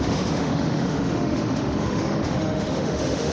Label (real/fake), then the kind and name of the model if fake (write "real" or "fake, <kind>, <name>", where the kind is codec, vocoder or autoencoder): fake, autoencoder, DAC-VAE